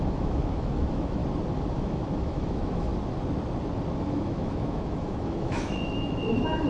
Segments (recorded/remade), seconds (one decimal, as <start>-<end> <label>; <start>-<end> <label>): 0.0-1.2 remade; 1.2-1.7 recorded; 1.7-2.9 remade; 2.9-4.0 recorded; 4.0-6.7 remade